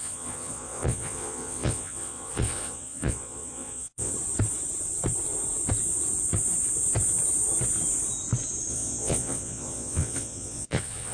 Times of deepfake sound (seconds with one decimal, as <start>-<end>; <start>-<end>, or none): 0.0-4.1; 8.7-11.1